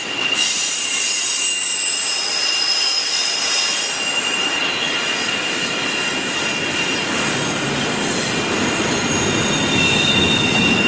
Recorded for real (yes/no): yes